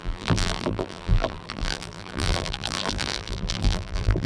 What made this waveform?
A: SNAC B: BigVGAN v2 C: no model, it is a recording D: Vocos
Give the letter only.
B